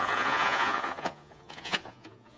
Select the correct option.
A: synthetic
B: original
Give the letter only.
A